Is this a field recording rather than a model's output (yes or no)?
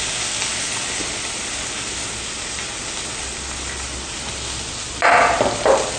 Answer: yes